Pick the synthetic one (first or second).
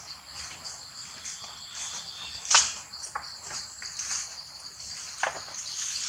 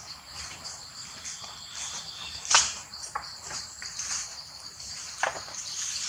second